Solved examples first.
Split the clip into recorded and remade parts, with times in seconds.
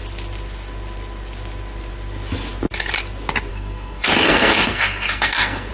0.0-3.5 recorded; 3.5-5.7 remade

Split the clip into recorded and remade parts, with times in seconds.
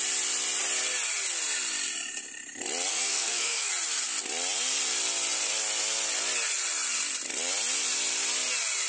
0.0-2.9 recorded; 2.9-3.7 remade; 3.7-8.9 recorded